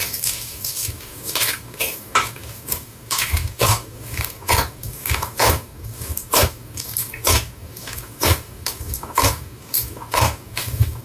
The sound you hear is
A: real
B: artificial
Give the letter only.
B